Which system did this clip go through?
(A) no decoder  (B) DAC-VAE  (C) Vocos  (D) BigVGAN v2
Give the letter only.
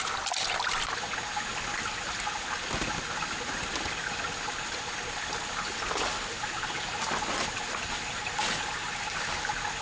A